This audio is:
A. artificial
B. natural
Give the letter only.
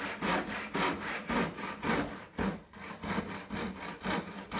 B